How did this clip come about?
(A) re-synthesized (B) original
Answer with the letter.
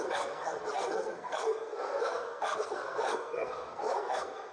A